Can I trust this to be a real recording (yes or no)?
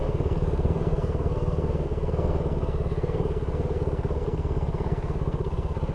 no